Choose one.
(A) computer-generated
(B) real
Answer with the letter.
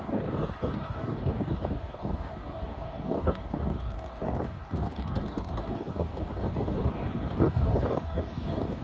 A